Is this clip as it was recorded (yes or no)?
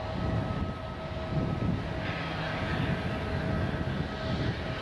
yes